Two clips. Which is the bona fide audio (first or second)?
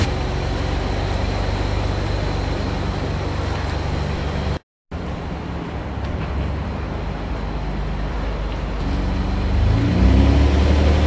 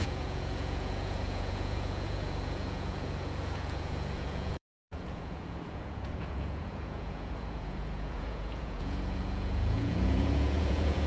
first